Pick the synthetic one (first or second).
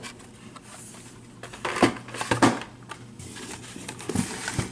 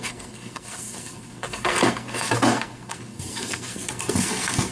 second